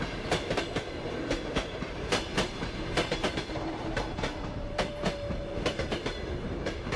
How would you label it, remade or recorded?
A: remade